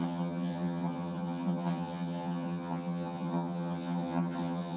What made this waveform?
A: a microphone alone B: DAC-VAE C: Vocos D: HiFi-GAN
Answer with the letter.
D